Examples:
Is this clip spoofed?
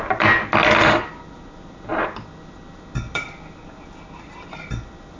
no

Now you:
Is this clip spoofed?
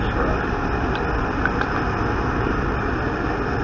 no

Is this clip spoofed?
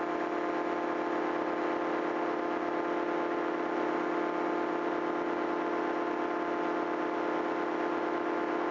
no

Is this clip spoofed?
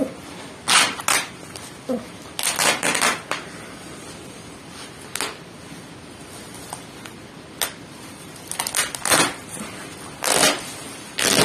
no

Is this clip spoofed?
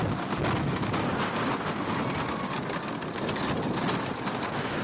no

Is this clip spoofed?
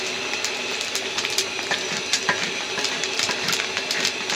yes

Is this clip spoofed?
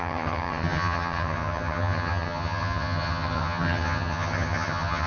yes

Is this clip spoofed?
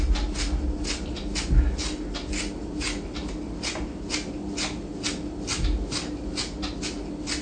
no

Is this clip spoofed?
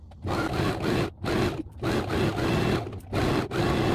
no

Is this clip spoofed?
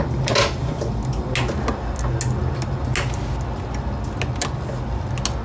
no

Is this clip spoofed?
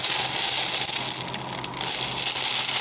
no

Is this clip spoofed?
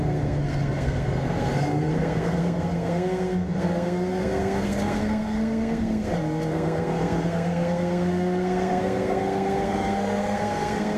yes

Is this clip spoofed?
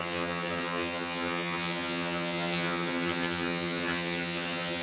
yes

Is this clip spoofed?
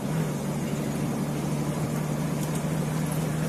no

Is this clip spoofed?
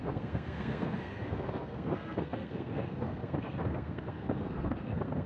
yes